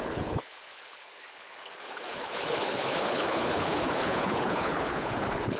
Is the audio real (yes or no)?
no